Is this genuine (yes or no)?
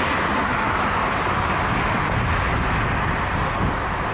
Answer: yes